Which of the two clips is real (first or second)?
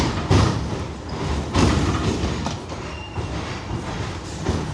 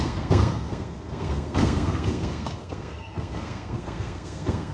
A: first